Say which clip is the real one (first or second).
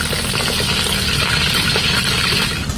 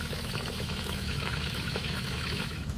first